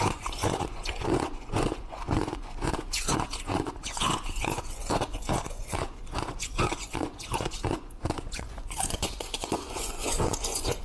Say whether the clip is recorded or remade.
remade